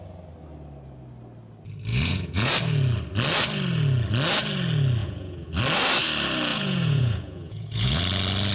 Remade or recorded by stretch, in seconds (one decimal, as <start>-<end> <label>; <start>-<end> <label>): 0.0-1.9 recorded; 1.9-2.5 remade; 2.5-5.0 recorded; 5.0-5.6 remade; 5.6-6.5 recorded; 6.5-8.0 remade; 8.0-8.5 recorded